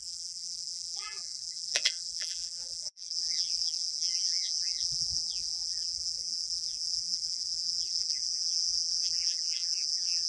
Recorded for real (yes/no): no